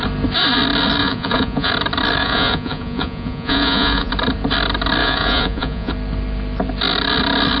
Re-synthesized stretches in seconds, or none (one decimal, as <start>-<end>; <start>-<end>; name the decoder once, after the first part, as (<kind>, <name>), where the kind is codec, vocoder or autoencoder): 1.0-1.7 (vocoder, Vocos); 2.2-4.1; 5.0-5.9